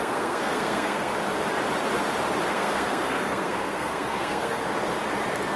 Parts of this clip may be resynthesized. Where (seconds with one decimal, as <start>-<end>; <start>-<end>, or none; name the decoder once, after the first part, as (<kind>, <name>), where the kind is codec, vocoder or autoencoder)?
0.0-1.1 (codec, SNAC); 2.5-4.6